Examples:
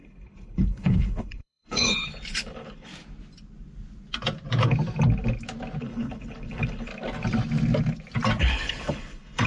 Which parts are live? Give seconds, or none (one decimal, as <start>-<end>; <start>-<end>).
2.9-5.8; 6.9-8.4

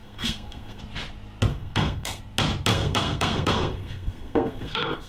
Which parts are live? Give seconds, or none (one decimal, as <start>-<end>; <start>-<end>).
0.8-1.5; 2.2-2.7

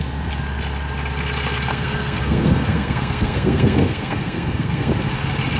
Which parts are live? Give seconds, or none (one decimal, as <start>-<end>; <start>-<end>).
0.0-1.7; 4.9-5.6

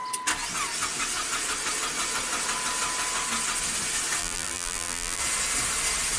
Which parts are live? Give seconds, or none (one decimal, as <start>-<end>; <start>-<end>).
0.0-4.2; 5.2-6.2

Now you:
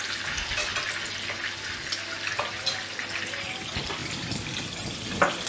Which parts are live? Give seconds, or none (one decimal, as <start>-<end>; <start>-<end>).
0.0-5.5

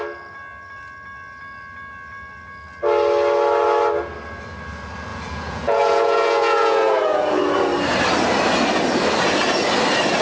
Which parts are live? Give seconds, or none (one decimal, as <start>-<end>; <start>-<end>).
0.0-5.1; 7.4-10.2

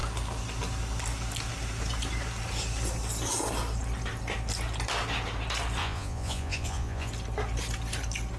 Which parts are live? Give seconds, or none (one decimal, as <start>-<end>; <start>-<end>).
0.0-5.8; 7.1-8.4